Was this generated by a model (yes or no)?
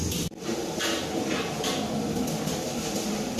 no